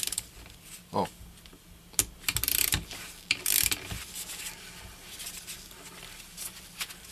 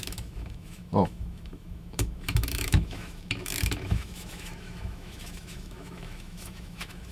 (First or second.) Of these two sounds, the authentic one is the first